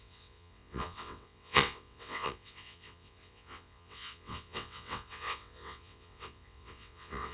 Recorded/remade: remade